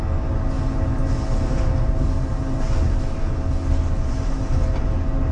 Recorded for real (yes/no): yes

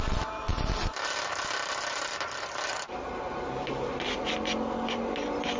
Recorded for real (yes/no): yes